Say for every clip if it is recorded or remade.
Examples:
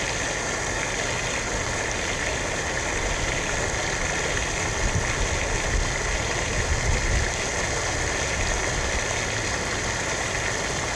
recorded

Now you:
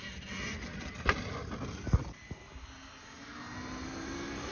recorded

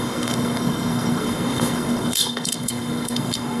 remade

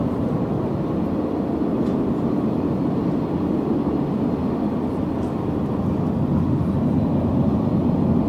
recorded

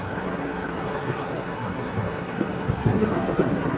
remade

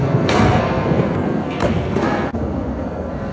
remade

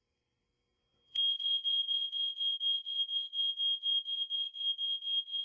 remade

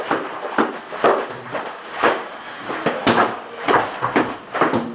recorded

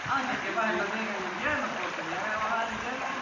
recorded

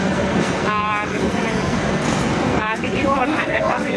remade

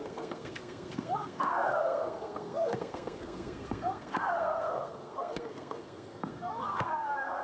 remade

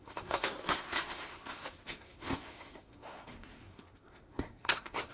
remade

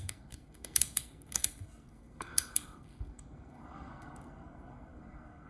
remade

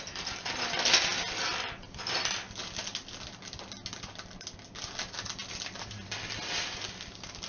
recorded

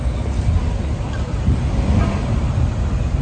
recorded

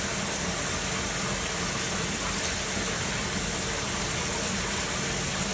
recorded